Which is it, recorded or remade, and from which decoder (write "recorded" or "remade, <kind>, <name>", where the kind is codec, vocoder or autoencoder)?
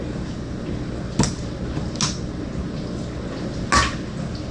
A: recorded